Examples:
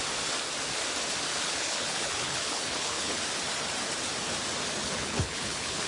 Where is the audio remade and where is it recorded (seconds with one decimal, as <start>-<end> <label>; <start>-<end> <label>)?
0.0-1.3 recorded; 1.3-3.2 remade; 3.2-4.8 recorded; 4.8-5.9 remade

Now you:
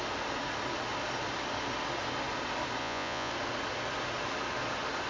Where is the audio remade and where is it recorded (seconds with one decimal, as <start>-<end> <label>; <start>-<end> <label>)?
0.0-2.8 recorded; 2.8-3.3 remade; 3.3-5.1 recorded

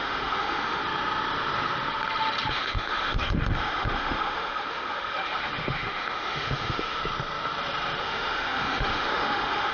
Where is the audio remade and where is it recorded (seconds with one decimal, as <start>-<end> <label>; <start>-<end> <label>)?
0.0-0.8 remade; 0.8-2.5 recorded; 2.5-7.0 remade; 7.0-8.0 recorded; 8.0-9.7 remade

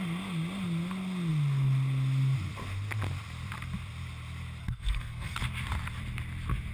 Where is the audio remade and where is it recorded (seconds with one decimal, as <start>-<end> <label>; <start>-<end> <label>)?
0.0-4.6 recorded; 4.6-5.4 remade; 5.4-6.7 recorded

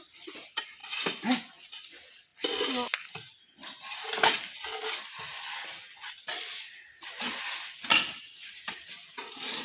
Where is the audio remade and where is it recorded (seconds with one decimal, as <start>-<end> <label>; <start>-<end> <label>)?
0.0-9.6 recorded

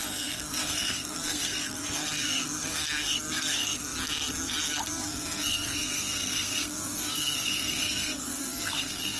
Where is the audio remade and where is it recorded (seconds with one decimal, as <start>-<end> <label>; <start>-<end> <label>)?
0.0-9.2 remade

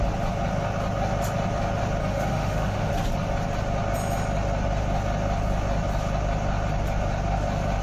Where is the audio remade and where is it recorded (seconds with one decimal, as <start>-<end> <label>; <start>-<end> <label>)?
0.0-2.0 recorded; 2.0-2.9 remade; 2.9-7.8 recorded

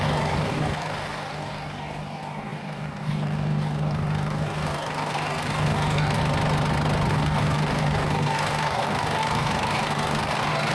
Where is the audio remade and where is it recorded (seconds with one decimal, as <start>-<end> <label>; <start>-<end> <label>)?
0.0-6.2 remade; 6.2-7.1 recorded; 7.1-10.7 remade